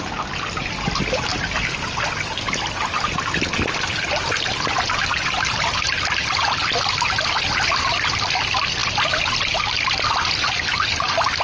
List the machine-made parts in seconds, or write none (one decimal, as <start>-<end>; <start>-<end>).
5.1-5.6